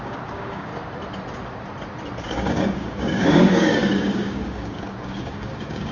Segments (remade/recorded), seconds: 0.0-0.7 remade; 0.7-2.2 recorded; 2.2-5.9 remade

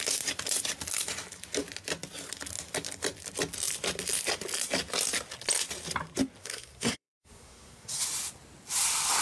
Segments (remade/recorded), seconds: 0.0-6.4 recorded; 6.4-8.0 remade; 8.0-9.2 recorded

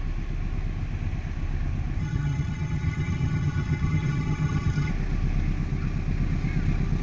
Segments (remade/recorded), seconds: 0.0-2.0 recorded; 2.0-4.9 remade; 4.9-7.0 recorded

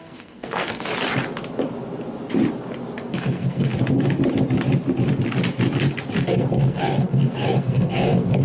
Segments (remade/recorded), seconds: 0.0-0.9 remade; 0.9-3.1 recorded; 3.1-3.7 remade; 3.7-6.2 recorded; 6.2-8.4 remade

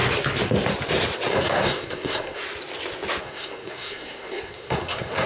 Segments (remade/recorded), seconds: 0.0-1.3 recorded; 1.3-2.4 remade; 2.4-3.2 recorded; 3.2-5.3 remade

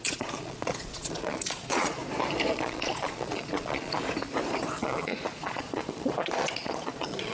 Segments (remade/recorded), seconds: 0.0-2.0 remade; 2.0-2.5 recorded; 2.5-4.0 remade; 4.0-4.8 recorded; 4.8-7.3 remade